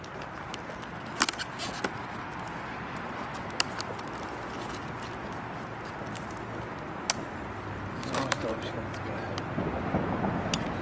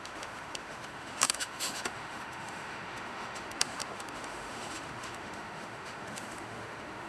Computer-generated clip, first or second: second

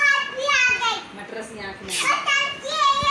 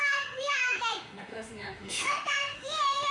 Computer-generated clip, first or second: second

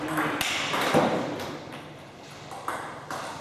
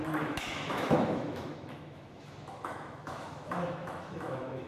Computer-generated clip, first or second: second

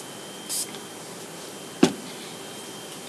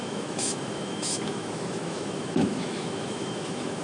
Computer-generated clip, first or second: second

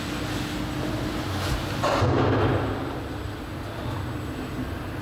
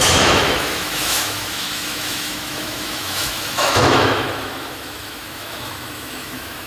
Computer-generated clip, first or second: second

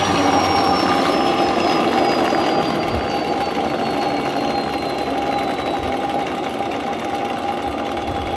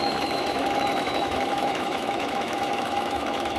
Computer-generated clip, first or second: second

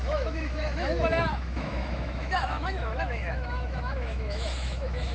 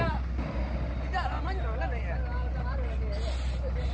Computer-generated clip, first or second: first